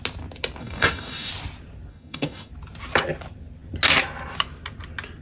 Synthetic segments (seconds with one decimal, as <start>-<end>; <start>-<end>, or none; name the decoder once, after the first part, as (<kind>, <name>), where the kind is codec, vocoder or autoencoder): 0.6-1.3 (codec, DAC); 1.9-2.5